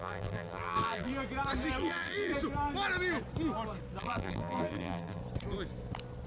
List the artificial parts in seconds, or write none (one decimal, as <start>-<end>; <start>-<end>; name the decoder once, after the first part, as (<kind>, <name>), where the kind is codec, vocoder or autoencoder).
0.0-1.1 (vocoder, BigVGAN v2); 1.8-2.3; 4.0-5.2